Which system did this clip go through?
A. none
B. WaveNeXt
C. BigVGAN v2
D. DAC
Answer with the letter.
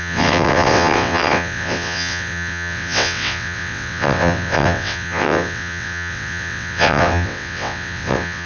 B